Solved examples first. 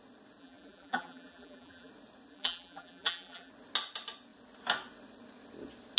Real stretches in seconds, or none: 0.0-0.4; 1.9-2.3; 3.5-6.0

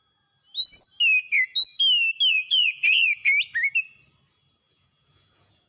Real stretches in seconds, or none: 0.0-2.3; 3.3-4.6